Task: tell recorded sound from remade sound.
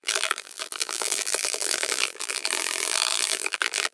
remade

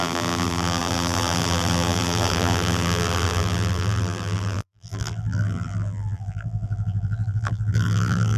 remade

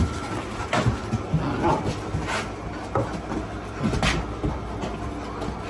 recorded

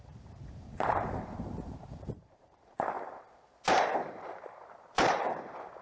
remade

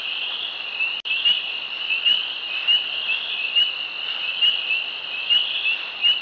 recorded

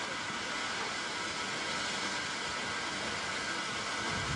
recorded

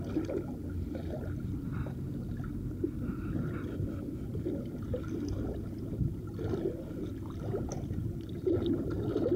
recorded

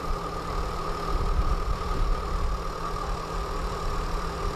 remade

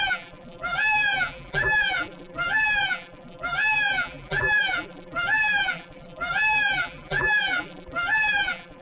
remade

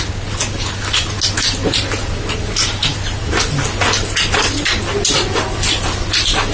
recorded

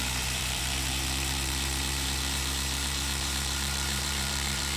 remade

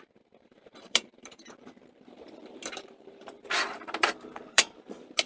remade